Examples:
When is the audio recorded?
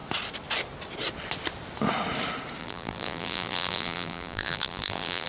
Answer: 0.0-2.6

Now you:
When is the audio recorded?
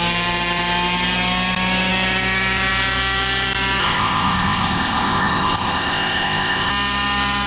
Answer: 0.0-3.8; 6.7-7.5